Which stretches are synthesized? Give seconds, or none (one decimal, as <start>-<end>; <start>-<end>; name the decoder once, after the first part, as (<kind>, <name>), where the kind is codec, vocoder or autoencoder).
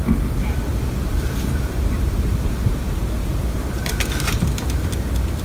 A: 0.7-3.9 (vocoder, BigVGAN v2)